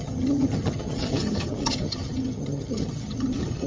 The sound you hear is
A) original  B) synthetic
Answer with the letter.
B